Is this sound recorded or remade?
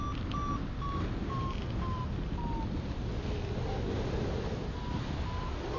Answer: recorded